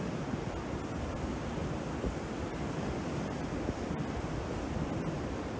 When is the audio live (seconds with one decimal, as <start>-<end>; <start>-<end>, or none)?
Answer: 0.0-5.6